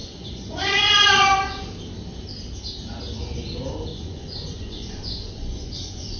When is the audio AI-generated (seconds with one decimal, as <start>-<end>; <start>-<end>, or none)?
0.0-1.7; 3.9-6.2